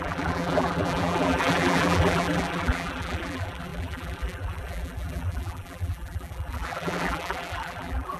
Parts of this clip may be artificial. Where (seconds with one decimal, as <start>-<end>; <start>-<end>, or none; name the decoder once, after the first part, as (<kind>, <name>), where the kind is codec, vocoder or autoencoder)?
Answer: 0.0-8.2 (vocoder, BigVGAN v2)